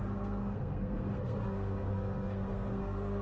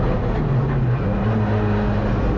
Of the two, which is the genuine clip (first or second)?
second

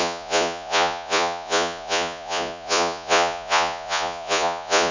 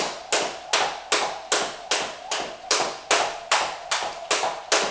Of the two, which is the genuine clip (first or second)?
second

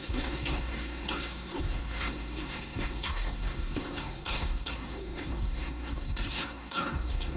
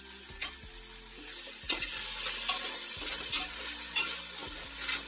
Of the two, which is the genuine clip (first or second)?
second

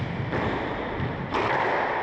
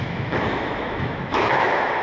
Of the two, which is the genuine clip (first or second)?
first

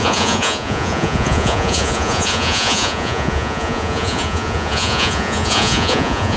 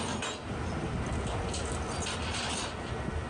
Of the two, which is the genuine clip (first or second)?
second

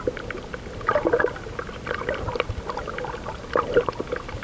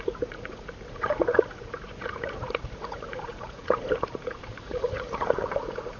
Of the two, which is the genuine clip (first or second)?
first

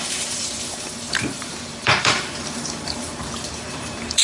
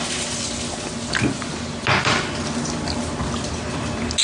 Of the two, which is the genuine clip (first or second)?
second